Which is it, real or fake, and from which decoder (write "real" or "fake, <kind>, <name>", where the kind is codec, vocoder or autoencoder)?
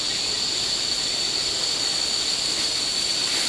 real